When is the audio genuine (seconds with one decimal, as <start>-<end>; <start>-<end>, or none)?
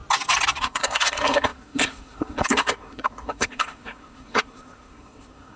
0.0-0.6